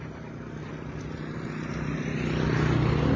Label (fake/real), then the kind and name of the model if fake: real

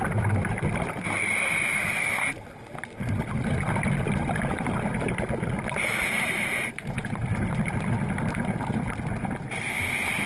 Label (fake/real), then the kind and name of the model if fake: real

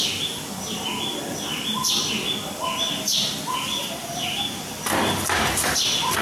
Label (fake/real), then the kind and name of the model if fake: real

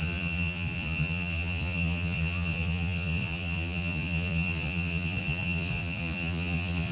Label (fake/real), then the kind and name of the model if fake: fake, vocoder, Vocos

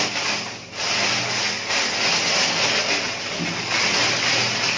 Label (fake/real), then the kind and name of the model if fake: real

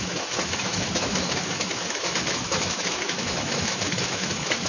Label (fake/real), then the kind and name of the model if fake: fake, autoencoder, DAC-VAE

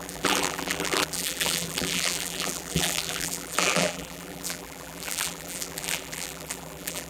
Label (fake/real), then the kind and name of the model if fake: fake, vocoder, BigVGAN v2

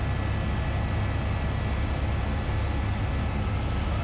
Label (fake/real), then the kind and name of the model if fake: real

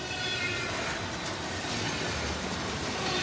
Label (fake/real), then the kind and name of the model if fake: real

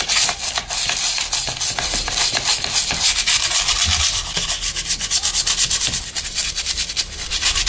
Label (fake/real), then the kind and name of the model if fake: real